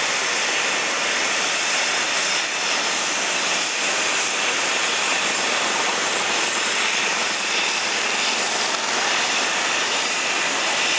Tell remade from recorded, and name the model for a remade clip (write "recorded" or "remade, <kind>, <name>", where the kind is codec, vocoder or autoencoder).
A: remade, vocoder, BigVGAN v2